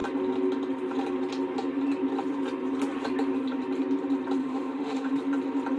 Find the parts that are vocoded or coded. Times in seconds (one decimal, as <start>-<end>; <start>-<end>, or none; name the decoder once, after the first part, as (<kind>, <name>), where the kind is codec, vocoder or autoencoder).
4.4-5.2 (autoencoder, DAC-VAE)